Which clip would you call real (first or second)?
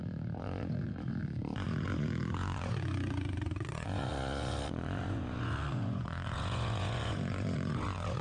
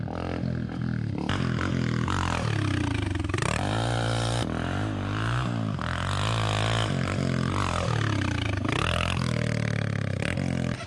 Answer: second